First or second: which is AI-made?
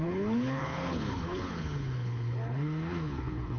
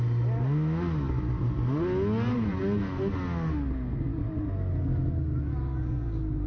first